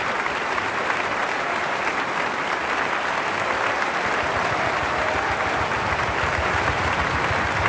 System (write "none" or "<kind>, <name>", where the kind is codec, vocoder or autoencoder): none